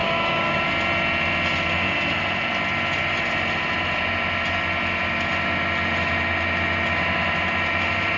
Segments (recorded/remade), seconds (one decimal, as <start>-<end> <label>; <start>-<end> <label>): 0.0-0.6 remade; 0.6-8.2 recorded

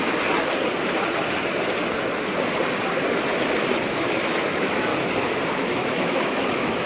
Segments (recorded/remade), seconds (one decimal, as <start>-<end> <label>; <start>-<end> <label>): 0.0-4.0 recorded; 4.0-4.9 remade; 4.9-5.6 recorded; 5.6-6.9 remade

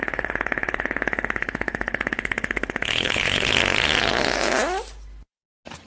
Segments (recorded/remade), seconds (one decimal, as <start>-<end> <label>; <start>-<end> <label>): 0.0-3.5 remade; 3.5-5.9 recorded

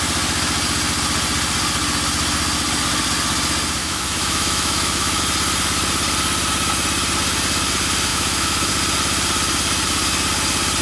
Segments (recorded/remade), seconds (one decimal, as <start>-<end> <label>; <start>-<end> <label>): 0.0-3.8 recorded; 3.8-5.2 remade; 5.2-8.1 recorded; 8.1-8.7 remade; 8.7-10.8 recorded

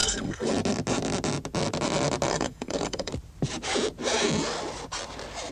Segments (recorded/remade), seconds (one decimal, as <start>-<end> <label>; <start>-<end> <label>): 0.0-0.5 remade; 0.5-2.3 recorded; 2.3-3.1 remade; 3.1-5.5 recorded

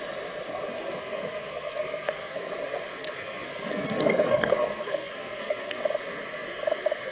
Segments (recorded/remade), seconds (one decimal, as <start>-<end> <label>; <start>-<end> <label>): 0.0-1.0 recorded; 1.0-2.5 remade; 2.5-2.9 recorded; 2.9-5.8 remade; 5.8-7.1 recorded

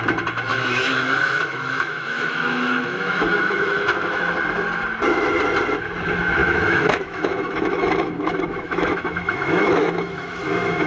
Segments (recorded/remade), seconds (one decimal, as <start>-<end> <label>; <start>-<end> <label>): 0.0-0.5 recorded; 0.5-4.3 remade; 4.3-6.4 recorded; 6.4-10.9 remade